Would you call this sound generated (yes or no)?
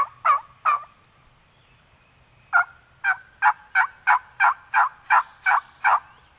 no